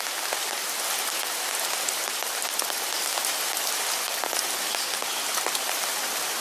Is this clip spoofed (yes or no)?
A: yes